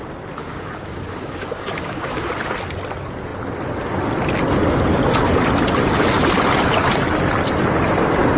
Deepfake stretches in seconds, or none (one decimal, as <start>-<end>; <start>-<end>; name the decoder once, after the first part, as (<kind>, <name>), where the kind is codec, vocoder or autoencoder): 0.4-2.3 (codec, DAC)